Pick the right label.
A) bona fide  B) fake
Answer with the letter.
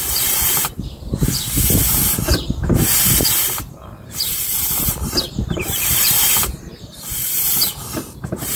B